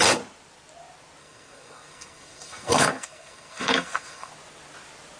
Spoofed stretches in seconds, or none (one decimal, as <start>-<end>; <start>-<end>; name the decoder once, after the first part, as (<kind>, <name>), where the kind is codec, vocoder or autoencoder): 1.2-4.3 (codec, SNAC)